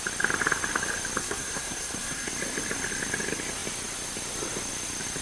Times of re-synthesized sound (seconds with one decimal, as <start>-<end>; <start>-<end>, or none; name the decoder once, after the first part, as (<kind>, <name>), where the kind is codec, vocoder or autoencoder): 1.2-2.3 (codec, SNAC)